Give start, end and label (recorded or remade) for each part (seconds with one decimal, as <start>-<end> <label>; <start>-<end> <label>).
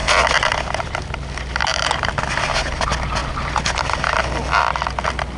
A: 0.0-1.6 recorded; 1.6-2.1 remade; 2.1-5.4 recorded